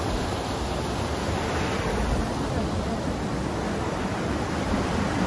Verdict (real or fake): real